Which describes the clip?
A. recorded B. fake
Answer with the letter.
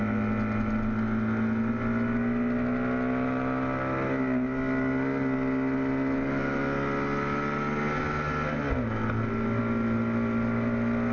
A